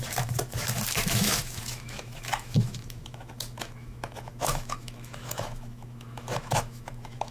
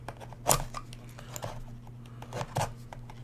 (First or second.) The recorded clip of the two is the second